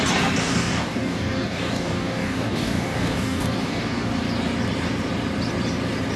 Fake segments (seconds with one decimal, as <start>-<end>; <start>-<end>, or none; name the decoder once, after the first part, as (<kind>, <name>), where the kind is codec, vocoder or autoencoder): 0.4-4.1 (codec, DAC)